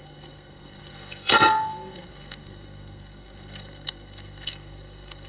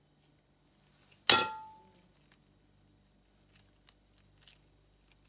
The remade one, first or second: first